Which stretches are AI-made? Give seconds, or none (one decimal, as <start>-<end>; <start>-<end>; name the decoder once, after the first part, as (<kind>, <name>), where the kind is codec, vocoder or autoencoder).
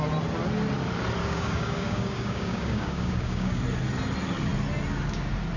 1.2-3.6 (codec, DAC)